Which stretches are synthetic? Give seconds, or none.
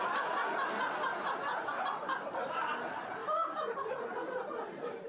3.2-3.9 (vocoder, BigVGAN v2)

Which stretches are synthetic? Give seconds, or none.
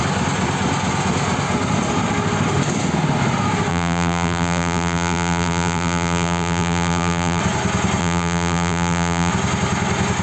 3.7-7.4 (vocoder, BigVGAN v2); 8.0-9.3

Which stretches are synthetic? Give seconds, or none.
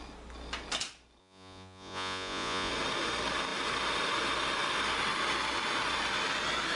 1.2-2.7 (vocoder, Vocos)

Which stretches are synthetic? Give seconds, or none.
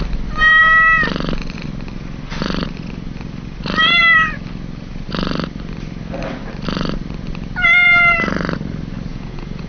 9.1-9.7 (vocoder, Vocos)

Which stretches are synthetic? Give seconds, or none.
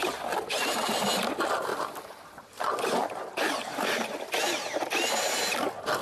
1.7-2.5 (vocoder, BigVGAN v2); 3.0-4.8